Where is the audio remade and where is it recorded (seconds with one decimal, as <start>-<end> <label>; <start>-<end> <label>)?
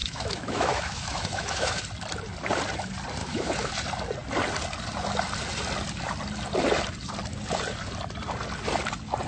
0.0-1.8 remade; 1.8-3.2 recorded; 3.2-3.7 remade; 3.7-9.3 recorded